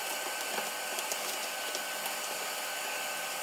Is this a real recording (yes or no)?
yes